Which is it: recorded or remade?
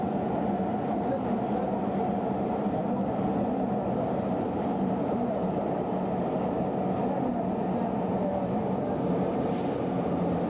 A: recorded